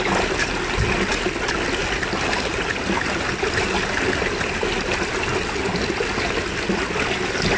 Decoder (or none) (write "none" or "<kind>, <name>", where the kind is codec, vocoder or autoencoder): none